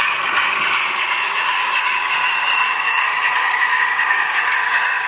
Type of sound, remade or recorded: remade